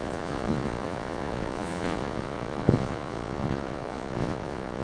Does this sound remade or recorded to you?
remade